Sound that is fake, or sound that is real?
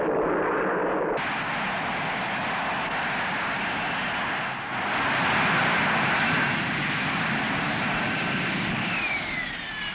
real